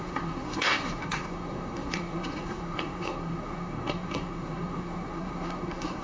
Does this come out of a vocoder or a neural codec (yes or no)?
yes